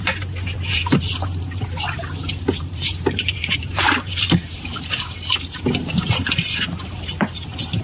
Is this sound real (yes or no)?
no